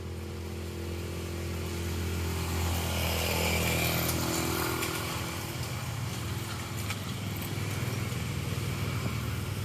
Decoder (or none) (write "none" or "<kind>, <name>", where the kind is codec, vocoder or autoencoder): none